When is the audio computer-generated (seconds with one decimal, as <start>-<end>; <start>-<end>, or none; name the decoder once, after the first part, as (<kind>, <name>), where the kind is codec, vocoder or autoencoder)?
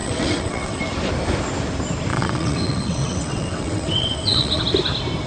0.0-0.8 (vocoder, WaveNeXt); 2.1-4.6